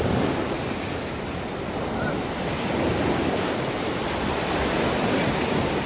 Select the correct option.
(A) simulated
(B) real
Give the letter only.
B